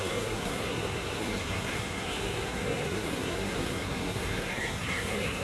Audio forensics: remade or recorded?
remade